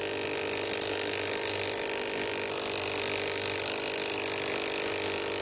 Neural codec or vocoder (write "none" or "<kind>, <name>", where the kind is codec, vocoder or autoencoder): none